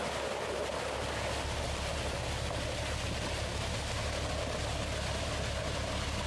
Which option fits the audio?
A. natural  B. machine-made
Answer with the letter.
A